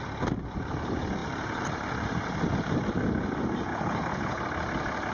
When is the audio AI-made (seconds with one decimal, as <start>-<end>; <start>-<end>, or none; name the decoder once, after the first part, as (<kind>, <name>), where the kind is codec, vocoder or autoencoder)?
3.7-4.4 (codec, HILCodec)